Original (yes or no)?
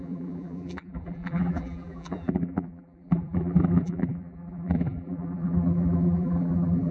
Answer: no